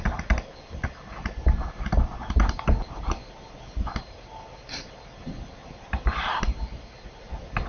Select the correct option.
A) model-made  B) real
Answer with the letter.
B